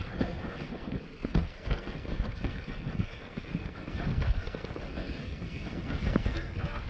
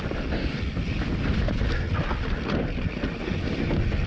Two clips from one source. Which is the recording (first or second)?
second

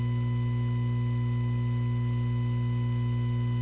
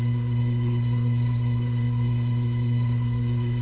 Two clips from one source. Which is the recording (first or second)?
first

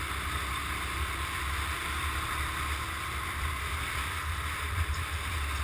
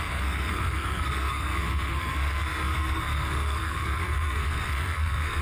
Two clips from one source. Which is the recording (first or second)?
first